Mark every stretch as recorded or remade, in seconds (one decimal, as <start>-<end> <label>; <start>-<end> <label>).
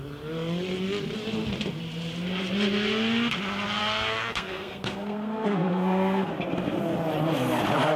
0.0-3.8 recorded; 3.8-6.3 remade; 6.3-8.0 recorded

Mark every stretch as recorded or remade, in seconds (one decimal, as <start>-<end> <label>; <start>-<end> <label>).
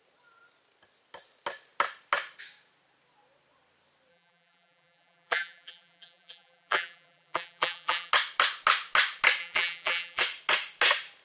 0.0-4.1 recorded; 4.1-8.1 remade; 8.1-9.4 recorded; 9.4-10.2 remade; 10.2-11.2 recorded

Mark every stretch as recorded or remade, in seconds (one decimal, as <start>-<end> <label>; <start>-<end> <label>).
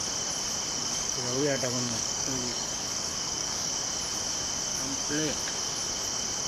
0.0-0.8 recorded; 0.8-3.7 remade; 3.7-4.7 recorded; 4.7-5.4 remade; 5.4-6.5 recorded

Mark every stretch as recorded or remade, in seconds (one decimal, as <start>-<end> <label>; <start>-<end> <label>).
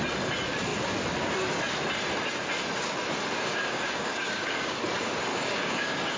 0.0-3.5 recorded; 3.5-4.8 remade; 4.8-5.3 recorded; 5.3-6.2 remade